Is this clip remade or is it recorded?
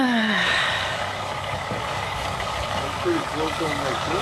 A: remade